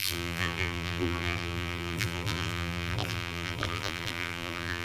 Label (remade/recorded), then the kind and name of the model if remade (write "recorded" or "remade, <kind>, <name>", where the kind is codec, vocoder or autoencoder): remade, vocoder, BigVGAN v2